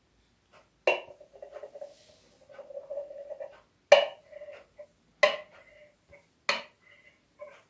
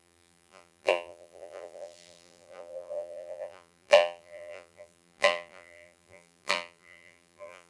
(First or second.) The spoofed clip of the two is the second